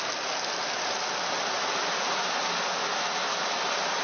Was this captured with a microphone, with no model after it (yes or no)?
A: yes